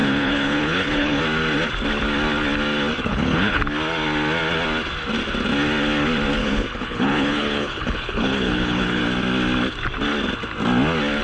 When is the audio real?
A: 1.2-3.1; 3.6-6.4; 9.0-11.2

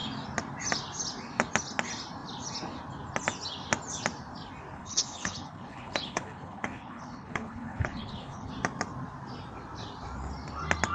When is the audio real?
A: 0.0-4.7; 8.5-10.9